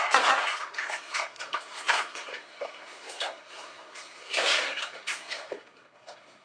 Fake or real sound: fake